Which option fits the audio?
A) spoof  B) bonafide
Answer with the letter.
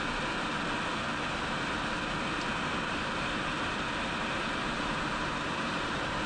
B